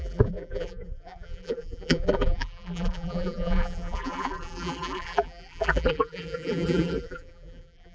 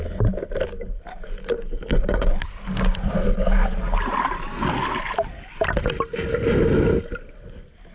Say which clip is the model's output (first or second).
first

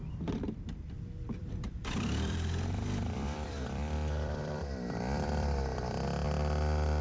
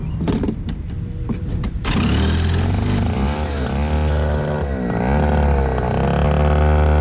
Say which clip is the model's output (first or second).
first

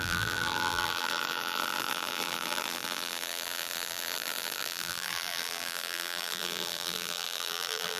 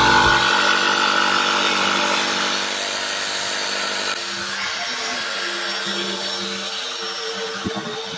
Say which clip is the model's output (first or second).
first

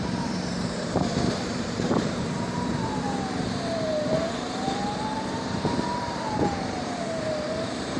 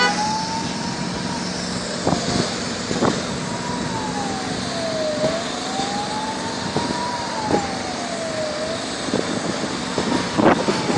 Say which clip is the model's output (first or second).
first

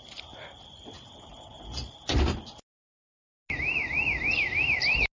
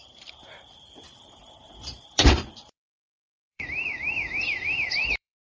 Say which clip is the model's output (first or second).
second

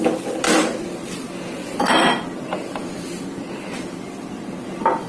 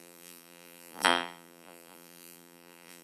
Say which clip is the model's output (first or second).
second